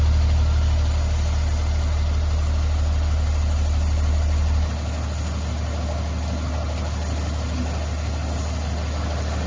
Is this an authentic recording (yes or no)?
yes